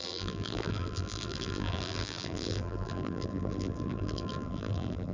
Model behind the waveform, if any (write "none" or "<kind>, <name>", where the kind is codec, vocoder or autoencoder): vocoder, BigVGAN v2